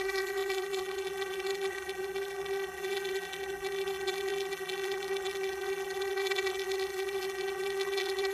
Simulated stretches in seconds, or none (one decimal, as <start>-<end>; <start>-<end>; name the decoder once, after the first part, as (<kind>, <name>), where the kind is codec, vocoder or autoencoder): 0.0-8.3 (vocoder, BigVGAN v2)